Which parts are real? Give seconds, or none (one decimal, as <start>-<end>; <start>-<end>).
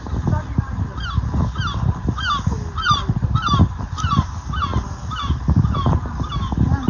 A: 0.0-6.9